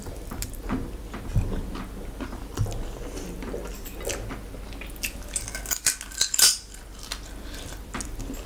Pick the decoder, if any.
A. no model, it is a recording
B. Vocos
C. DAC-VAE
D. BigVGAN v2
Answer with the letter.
A